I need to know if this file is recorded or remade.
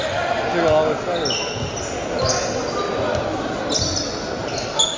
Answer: recorded